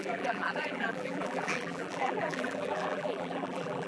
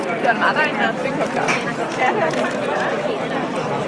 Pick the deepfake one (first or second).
first